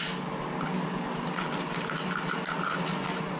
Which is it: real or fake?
real